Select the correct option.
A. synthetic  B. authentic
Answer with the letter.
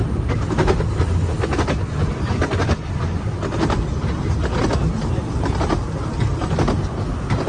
B